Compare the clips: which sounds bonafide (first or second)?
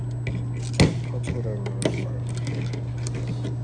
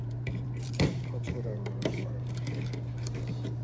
first